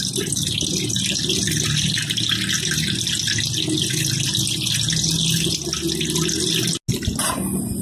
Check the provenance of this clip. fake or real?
real